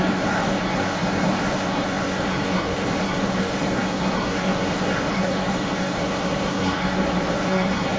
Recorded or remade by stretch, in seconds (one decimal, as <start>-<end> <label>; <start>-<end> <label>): 0.0-8.0 remade